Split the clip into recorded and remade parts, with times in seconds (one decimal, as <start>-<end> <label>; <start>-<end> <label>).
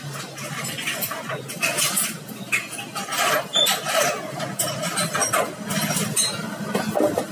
0.0-7.3 recorded